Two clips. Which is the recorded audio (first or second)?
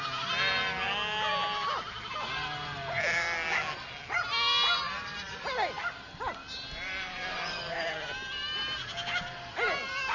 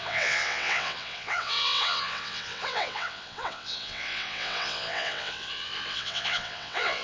first